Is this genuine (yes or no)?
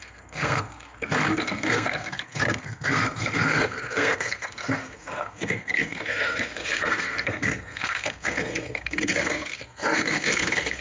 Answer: no